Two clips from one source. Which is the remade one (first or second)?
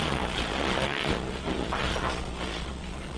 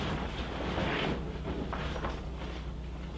first